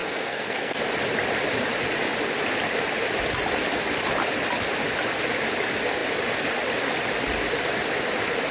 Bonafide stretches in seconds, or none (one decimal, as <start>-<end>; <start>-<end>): 0.8-8.5